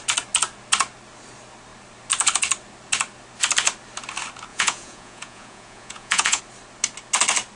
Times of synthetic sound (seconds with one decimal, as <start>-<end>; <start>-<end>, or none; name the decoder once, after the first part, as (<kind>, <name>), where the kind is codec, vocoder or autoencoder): 4.5-6.4 (vocoder, Vocos)